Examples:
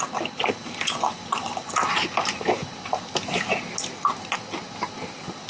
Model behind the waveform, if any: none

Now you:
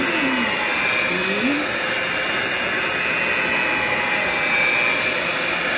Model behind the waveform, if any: none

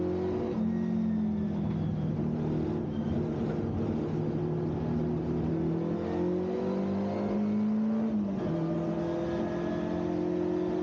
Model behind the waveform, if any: none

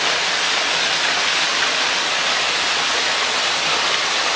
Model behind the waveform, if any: none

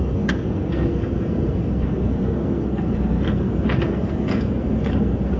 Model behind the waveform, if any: codec, SNAC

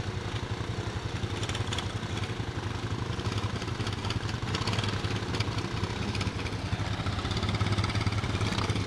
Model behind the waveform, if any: none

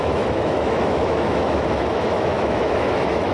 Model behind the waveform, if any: autoencoder, DAC-VAE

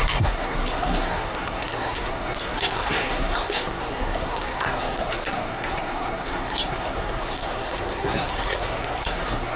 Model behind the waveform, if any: codec, SNAC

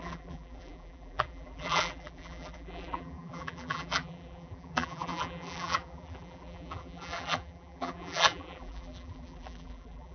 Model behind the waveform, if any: vocoder, BigVGAN v2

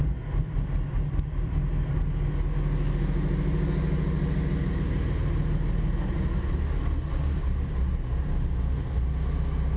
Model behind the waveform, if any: none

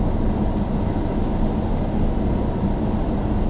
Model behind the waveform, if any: none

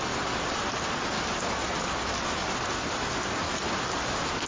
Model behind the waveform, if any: none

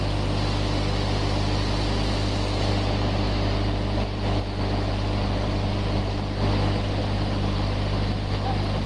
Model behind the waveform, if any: none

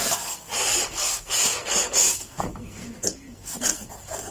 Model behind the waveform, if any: codec, SNAC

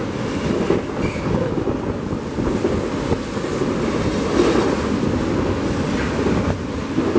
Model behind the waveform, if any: none